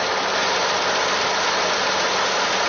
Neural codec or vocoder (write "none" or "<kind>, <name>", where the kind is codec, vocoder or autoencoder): none